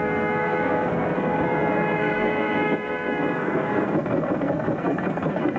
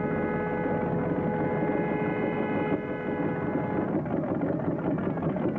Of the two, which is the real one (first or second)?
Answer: second